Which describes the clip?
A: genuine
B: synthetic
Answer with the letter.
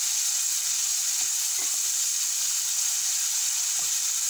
A